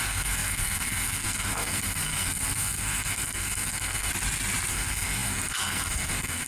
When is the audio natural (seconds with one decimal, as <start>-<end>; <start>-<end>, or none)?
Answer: 4.1-4.7